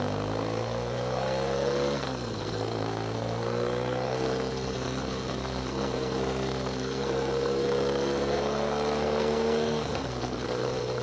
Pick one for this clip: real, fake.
fake